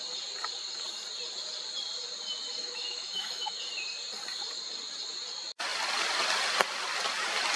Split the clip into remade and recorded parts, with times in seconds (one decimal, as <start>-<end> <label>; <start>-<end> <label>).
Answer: 0.0-2.6 recorded; 2.6-3.6 remade; 3.6-7.6 recorded